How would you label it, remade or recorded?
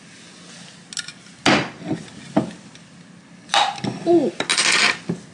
recorded